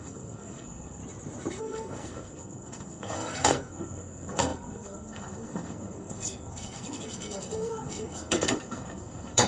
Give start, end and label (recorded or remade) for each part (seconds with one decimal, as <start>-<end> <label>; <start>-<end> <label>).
0.0-1.0 remade; 1.0-1.6 recorded; 1.6-9.5 remade